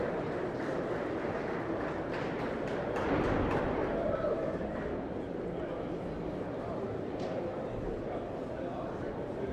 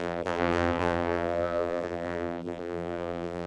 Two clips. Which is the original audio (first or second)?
first